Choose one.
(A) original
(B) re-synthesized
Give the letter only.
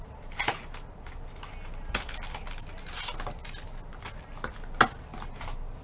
A